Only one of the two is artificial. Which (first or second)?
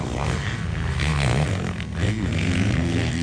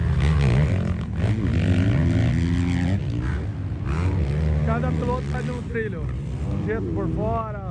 first